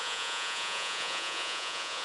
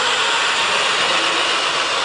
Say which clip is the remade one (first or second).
first